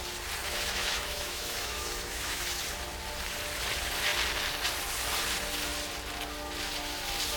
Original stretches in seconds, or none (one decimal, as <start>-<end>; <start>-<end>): 0.0-0.4; 2.6-7.4